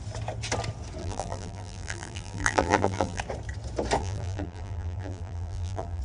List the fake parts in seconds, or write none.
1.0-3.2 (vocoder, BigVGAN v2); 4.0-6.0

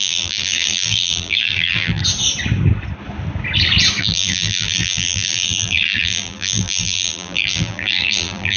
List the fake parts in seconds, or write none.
0.0-2.0 (vocoder, BigVGAN v2); 4.0-8.6

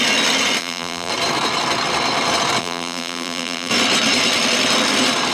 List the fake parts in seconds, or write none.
0.6-1.1 (vocoder, BigVGAN v2); 2.6-3.7